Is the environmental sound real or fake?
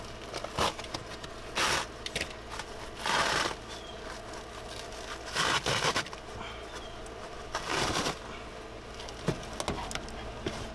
real